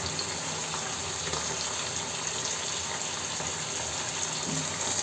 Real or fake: real